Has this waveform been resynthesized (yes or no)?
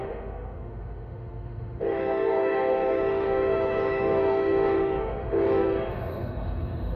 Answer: yes